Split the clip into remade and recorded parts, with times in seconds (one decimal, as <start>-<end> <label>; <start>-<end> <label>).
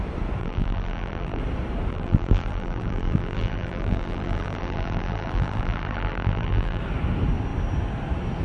0.0-0.4 recorded; 0.4-1.4 remade; 1.4-1.9 recorded; 1.9-6.8 remade; 6.8-8.4 recorded